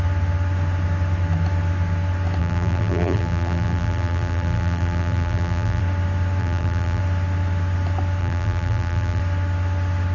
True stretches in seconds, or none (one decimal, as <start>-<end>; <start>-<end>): 0.0-2.4; 5.8-6.4; 7.0-8.2; 9.2-10.1